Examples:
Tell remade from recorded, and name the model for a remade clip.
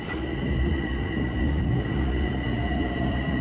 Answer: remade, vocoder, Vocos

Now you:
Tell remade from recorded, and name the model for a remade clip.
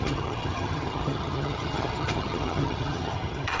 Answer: remade, vocoder, HiFi-GAN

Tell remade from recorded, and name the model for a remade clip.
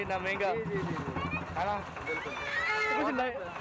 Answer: recorded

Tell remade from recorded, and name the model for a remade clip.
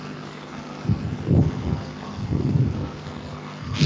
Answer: remade, codec, SNAC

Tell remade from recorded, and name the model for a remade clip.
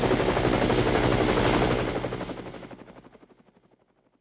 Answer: recorded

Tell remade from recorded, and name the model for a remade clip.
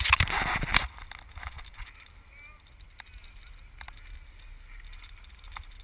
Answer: recorded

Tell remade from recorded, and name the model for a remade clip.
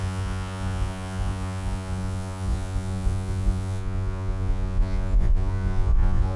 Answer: remade, vocoder, Vocos